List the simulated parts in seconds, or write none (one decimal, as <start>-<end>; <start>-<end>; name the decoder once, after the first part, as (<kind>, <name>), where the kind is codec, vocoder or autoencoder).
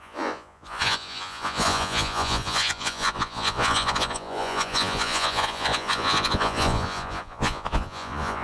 0.0-8.4 (vocoder, Vocos)